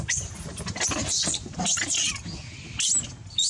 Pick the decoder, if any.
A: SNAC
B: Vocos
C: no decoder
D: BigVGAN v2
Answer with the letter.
C